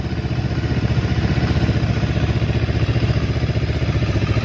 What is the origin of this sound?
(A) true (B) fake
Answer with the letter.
A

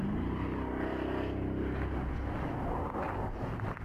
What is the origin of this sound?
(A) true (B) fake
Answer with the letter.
A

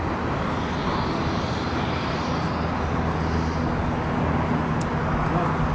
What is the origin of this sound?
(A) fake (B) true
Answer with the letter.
B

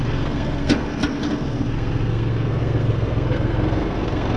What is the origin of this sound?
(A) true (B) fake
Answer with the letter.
B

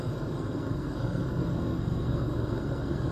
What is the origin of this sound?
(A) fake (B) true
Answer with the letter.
A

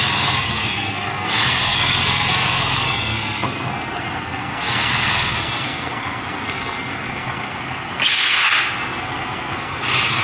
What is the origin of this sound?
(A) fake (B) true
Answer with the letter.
A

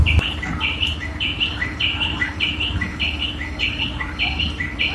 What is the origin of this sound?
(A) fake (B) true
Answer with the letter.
B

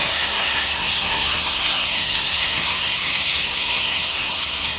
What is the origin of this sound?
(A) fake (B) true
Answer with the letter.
A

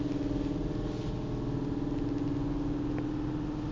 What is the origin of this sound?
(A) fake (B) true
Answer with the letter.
B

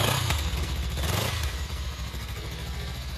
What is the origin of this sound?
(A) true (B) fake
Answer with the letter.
B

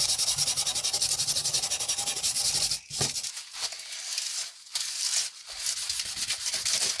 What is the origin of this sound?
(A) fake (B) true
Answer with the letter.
B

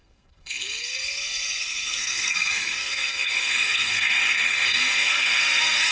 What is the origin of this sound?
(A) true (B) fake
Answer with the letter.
B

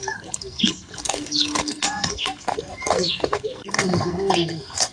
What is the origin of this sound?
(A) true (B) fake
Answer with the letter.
B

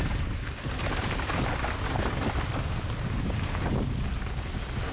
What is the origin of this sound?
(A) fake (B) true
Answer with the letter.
B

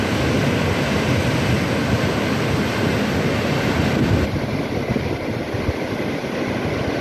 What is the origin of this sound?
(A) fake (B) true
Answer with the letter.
B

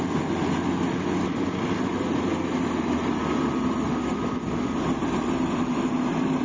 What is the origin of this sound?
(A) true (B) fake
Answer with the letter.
A